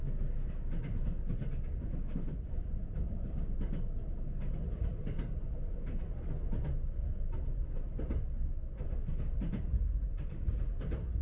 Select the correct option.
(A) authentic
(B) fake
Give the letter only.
A